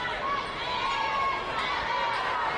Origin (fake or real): real